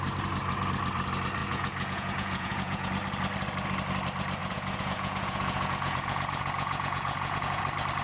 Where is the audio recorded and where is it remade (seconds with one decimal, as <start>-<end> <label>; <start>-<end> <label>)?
0.0-1.4 recorded; 1.4-2.9 remade; 2.9-4.4 recorded; 4.4-7.6 remade; 7.6-8.0 recorded